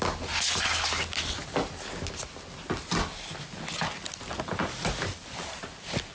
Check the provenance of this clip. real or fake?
real